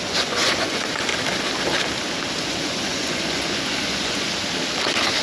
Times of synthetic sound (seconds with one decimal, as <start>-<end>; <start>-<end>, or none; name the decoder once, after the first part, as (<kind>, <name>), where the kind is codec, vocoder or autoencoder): 0.0-1.1 (vocoder, Vocos); 2.4-4.3